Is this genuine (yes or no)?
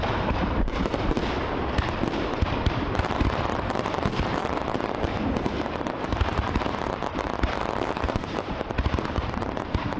no